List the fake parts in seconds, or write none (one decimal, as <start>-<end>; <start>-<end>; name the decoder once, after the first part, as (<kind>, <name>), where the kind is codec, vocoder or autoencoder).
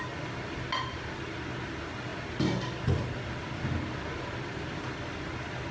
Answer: none